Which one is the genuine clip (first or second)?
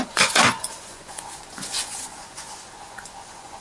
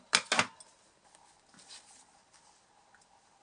second